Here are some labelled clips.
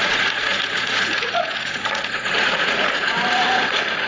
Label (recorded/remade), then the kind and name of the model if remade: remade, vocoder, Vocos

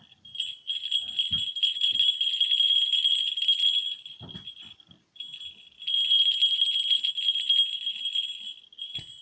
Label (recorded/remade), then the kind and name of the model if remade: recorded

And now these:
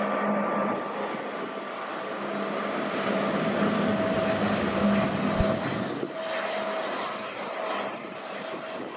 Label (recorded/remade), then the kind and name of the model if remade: recorded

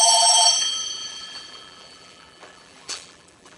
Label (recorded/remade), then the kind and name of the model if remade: remade, vocoder, BigVGAN v2